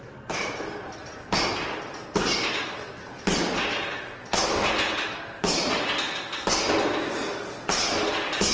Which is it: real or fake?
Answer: real